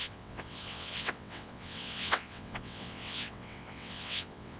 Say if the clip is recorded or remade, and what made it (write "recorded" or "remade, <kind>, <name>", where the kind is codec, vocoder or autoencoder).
remade, vocoder, WaveNeXt